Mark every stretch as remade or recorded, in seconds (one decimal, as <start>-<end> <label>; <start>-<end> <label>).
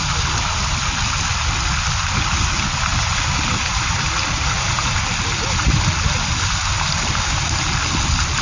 0.0-8.4 recorded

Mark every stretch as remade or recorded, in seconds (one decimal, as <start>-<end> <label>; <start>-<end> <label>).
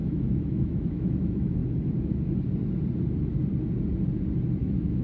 0.0-1.6 remade; 1.6-4.6 recorded; 4.6-5.0 remade